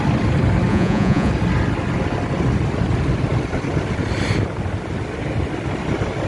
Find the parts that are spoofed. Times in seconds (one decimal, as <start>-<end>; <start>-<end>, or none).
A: 0.7-1.3